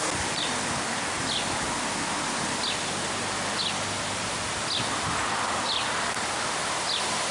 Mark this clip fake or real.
real